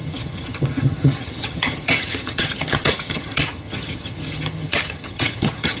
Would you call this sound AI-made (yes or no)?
yes